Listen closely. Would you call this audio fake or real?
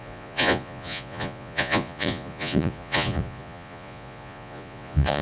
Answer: fake